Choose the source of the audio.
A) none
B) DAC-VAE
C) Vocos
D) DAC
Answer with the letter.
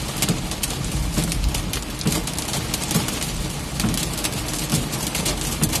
A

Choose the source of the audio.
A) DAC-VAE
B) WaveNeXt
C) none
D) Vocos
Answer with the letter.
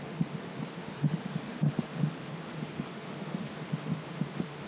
A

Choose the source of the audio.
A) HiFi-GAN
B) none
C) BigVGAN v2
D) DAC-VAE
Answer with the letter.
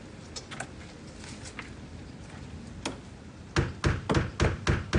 B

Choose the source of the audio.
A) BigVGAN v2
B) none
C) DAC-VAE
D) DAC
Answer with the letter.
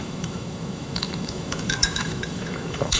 C